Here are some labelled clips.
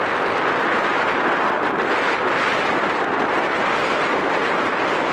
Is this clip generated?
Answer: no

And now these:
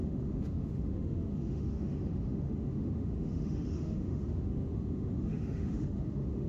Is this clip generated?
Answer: yes